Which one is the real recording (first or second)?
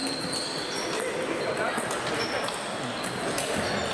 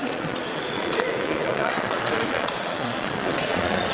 first